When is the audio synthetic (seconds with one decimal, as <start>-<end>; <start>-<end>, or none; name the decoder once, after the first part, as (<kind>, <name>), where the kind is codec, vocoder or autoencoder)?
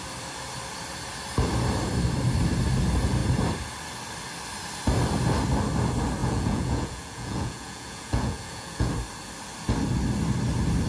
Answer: 6.2-8.9 (vocoder, Vocos)